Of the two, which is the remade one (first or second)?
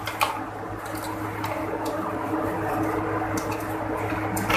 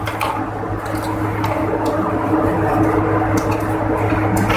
second